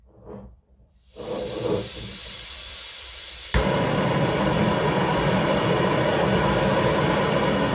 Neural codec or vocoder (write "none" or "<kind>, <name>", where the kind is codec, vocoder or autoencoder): vocoder, BigVGAN v2